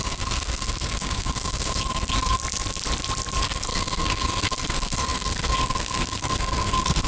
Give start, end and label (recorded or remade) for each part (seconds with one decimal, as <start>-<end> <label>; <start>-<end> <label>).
0.0-2.4 remade; 2.4-3.4 recorded; 3.4-7.1 remade